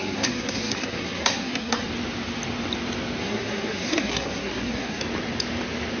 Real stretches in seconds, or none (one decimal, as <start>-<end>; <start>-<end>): 1.9-3.2; 5.0-6.0